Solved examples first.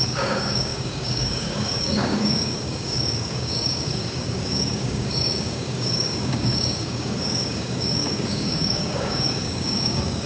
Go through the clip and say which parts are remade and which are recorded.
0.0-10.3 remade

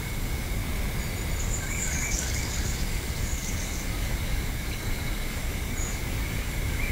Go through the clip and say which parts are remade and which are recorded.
0.0-0.6 remade; 0.6-1.4 recorded; 1.4-6.9 remade

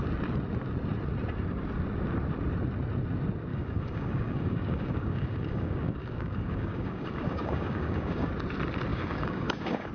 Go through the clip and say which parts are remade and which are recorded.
0.0-3.5 recorded; 3.5-8.3 remade; 8.3-8.9 recorded; 8.9-9.9 remade

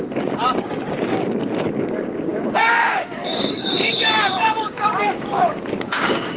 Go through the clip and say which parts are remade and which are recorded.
0.0-6.4 remade